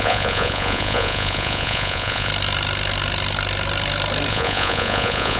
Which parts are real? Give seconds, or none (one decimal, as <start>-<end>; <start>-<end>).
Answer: 2.3-4.3